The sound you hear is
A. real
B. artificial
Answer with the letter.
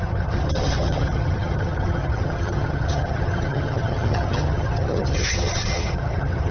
B